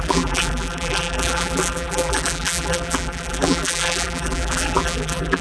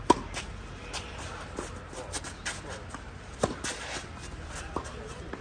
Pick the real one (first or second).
second